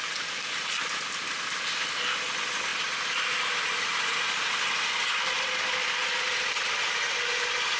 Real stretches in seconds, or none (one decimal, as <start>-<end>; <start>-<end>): 0.0-7.8